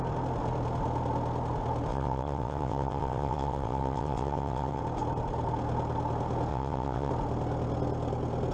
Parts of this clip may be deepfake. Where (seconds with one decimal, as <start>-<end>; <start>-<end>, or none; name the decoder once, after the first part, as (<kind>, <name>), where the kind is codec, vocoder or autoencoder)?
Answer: 1.9-4.8 (vocoder, WaveNeXt); 6.5-7.1